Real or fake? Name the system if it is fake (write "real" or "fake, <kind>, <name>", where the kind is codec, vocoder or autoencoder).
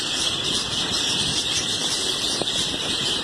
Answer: real